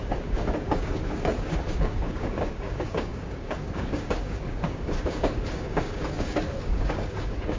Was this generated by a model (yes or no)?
yes